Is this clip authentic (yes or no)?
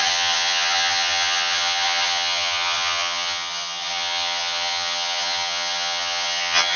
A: no